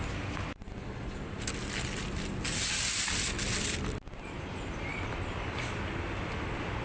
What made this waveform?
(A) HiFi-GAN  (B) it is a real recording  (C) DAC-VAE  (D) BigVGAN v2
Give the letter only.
B